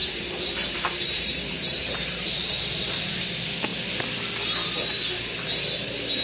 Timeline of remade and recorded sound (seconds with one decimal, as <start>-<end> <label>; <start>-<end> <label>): 0.0-3.2 remade; 3.2-6.2 recorded